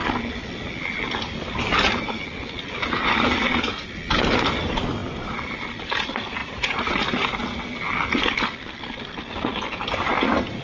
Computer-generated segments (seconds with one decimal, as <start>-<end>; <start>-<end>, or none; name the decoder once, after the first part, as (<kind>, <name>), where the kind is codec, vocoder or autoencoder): 6.4-6.9 (vocoder, Vocos)